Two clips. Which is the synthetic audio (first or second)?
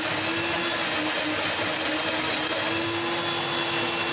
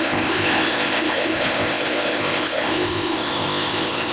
second